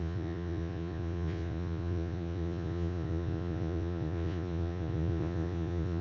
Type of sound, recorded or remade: remade